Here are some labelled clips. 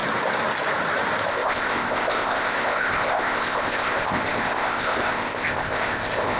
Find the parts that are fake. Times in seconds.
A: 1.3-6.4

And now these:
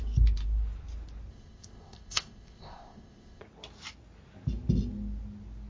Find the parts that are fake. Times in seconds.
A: 1.3-3.4